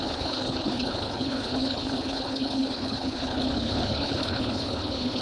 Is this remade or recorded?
remade